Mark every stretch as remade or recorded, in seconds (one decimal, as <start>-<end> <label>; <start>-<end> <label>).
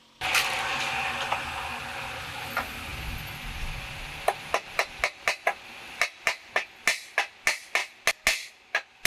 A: 0.0-9.1 recorded